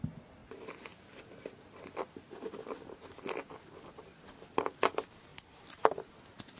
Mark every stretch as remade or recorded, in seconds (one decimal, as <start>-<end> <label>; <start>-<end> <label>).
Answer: 0.0-6.6 recorded